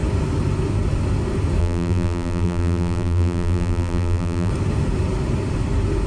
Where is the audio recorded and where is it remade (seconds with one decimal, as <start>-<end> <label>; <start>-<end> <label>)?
0.0-1.6 recorded; 1.6-4.5 remade; 4.5-6.1 recorded